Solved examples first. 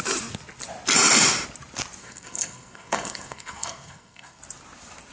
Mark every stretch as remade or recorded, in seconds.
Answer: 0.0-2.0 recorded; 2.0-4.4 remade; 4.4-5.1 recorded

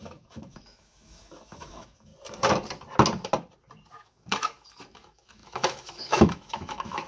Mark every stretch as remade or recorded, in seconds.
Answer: 0.0-2.1 remade; 2.1-3.9 recorded; 3.9-7.1 remade